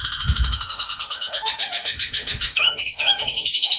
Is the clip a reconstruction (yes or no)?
yes